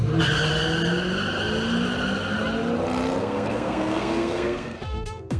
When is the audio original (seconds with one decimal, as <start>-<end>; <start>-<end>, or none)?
0.0-3.2